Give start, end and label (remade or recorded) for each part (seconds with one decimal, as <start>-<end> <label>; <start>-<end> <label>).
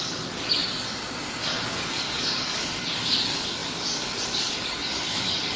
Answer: 0.0-0.6 remade; 0.6-1.7 recorded; 1.7-5.6 remade